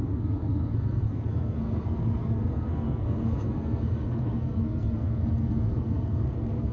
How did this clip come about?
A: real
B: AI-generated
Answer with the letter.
B